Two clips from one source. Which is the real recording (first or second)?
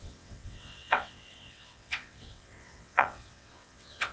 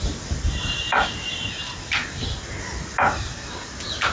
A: second